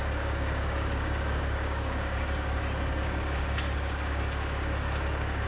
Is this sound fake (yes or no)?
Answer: yes